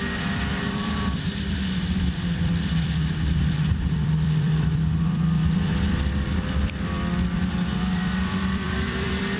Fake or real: fake